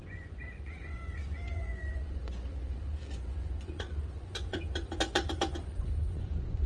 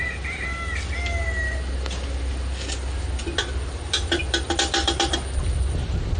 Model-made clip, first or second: first